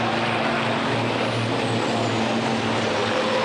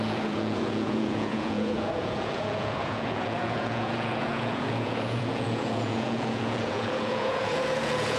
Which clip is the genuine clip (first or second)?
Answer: first